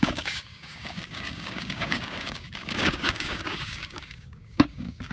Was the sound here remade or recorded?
remade